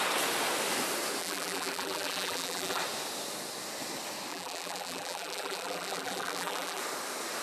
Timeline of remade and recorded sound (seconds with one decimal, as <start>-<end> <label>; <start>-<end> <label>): 0.0-1.2 recorded; 1.2-2.8 remade; 2.8-4.3 recorded; 4.3-6.8 remade; 6.8-7.4 recorded